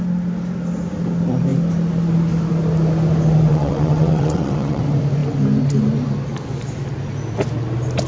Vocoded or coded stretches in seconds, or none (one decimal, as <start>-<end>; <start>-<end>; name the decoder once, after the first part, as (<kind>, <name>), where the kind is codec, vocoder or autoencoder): 3.5-4.8 (vocoder, WaveNeXt)